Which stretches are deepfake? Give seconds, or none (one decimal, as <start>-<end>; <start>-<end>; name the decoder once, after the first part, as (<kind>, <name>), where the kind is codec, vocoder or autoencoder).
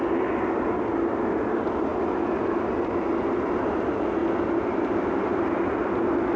none